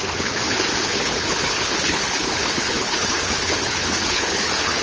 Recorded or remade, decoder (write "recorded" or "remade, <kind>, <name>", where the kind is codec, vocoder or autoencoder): remade, codec, HILCodec